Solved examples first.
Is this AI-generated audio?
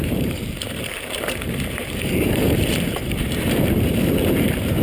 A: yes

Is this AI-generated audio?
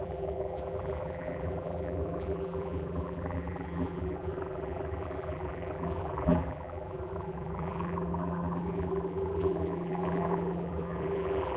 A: yes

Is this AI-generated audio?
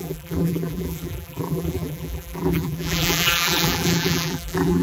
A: yes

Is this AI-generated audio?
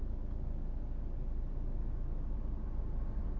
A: no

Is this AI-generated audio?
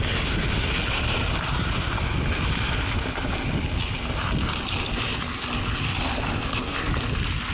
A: no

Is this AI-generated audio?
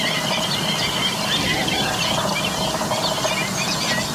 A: no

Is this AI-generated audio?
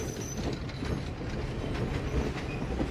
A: no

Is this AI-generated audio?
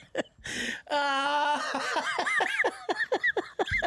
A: no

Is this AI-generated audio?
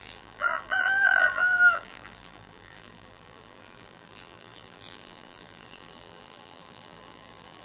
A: yes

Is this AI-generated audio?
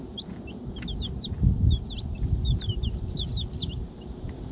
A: no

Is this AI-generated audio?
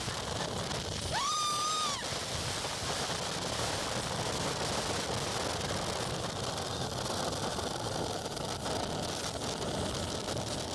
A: no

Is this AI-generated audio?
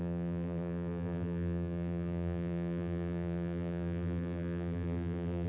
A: yes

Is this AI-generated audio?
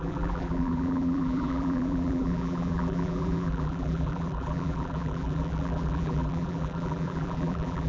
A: yes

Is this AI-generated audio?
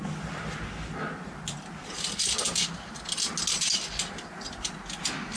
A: no